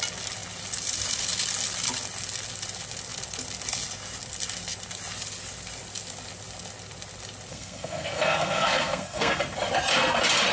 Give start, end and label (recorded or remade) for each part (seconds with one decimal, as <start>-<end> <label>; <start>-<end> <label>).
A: 0.0-7.5 recorded; 7.5-9.4 remade; 9.4-10.5 recorded